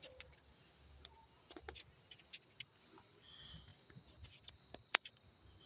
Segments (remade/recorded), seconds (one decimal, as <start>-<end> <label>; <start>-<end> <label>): 0.0-5.7 recorded